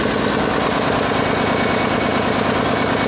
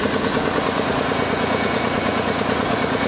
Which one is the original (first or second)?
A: first